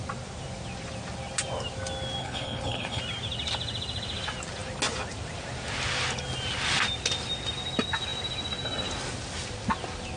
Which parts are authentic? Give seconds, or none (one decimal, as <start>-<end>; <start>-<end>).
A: 0.0-2.2; 3.0-10.2